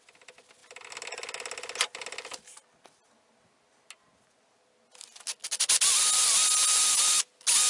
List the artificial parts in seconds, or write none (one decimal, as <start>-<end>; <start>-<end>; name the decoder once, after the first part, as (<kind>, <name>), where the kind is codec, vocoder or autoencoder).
none